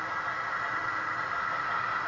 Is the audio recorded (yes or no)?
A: yes